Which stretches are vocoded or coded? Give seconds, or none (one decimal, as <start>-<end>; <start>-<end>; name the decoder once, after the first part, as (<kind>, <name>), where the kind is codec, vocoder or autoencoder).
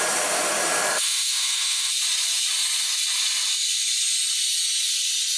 0.9-1.9 (autoencoder, DAC-VAE)